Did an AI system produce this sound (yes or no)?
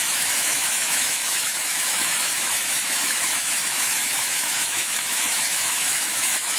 yes